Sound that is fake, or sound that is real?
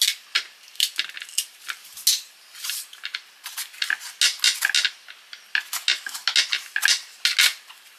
real